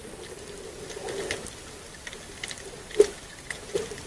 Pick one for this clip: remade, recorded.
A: recorded